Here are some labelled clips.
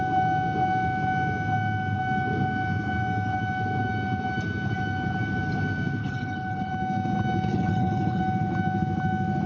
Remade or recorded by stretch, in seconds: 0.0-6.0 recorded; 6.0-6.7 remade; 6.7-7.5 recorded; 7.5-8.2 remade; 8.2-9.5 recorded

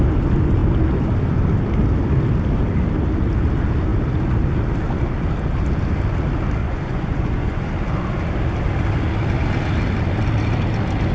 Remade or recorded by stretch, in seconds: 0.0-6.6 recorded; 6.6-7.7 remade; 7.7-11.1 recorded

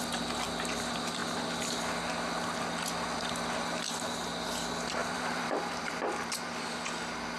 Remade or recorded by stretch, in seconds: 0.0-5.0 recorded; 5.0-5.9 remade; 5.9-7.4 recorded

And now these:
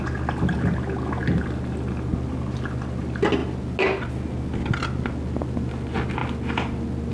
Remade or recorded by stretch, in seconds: 0.0-7.1 recorded